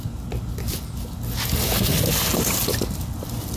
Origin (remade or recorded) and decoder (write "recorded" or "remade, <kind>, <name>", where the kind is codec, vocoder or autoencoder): recorded